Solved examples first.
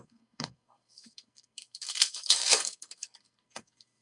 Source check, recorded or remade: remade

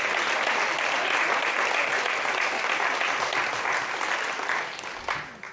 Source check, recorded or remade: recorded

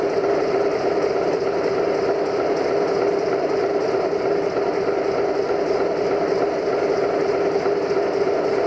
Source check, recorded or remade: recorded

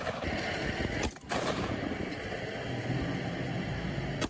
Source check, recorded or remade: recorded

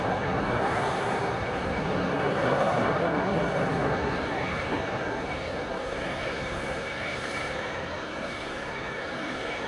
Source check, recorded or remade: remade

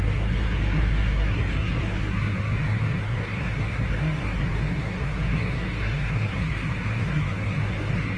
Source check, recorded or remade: remade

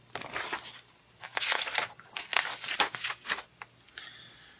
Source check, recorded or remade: recorded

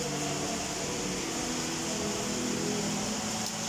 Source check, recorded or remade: recorded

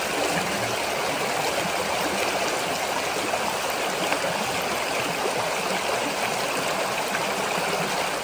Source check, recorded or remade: recorded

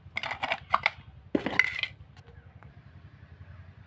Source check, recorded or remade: recorded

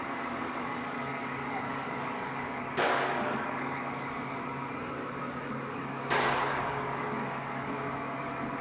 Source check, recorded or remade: remade